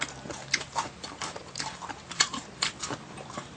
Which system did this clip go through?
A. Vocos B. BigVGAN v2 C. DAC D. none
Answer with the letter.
B